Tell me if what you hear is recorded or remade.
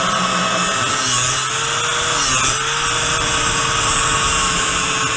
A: recorded